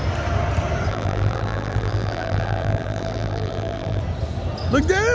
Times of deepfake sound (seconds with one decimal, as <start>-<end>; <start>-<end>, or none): 0.9-4.0